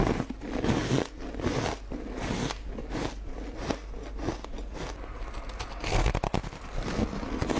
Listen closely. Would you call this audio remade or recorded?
recorded